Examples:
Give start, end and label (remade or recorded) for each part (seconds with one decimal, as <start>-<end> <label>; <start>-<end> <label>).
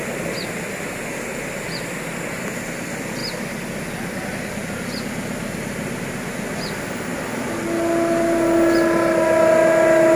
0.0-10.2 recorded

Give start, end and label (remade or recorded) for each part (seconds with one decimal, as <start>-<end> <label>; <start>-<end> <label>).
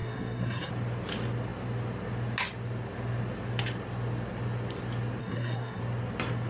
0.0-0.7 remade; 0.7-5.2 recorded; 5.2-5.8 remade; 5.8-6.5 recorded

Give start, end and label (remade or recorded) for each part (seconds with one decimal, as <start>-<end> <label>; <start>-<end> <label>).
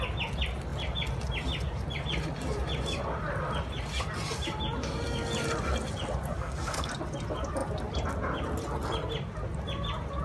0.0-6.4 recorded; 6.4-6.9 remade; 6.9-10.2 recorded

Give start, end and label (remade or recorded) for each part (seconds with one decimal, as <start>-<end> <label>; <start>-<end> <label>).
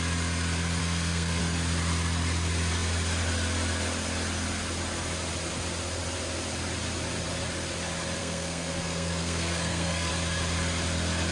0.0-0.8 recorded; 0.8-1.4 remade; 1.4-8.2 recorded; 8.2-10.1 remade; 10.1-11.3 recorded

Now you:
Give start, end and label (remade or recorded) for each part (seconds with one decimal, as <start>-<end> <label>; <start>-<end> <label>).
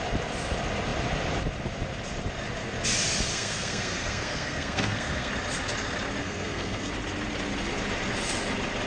0.0-3.3 recorded; 3.3-5.3 remade; 5.3-6.2 recorded; 6.2-6.9 remade; 6.9-8.9 recorded